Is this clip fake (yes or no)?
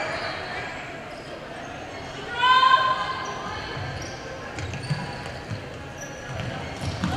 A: no